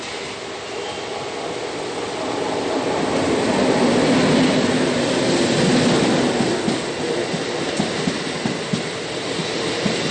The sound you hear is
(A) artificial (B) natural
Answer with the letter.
B